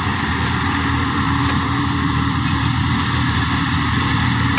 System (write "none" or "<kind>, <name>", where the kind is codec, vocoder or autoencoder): vocoder, BigVGAN v2